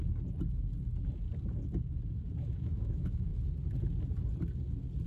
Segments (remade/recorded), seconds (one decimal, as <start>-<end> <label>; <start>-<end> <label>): 0.0-2.4 recorded; 2.4-3.3 remade; 3.3-5.1 recorded